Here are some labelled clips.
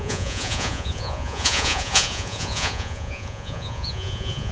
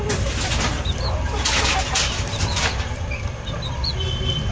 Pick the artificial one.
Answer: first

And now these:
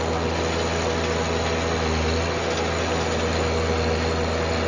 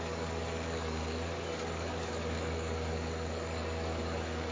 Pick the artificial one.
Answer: second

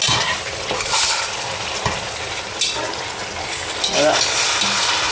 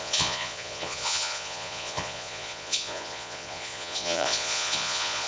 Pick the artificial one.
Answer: second